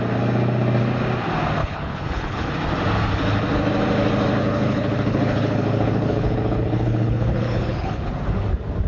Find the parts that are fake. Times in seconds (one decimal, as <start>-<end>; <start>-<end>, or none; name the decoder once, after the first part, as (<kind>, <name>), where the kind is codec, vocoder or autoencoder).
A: 1.6-2.5 (codec, HILCodec); 4.4-8.1